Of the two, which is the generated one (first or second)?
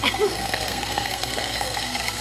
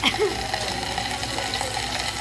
first